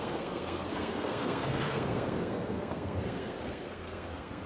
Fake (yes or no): yes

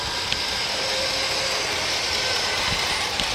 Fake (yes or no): no